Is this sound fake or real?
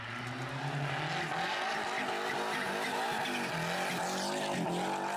real